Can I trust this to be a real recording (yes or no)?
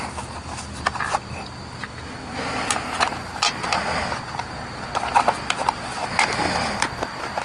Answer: yes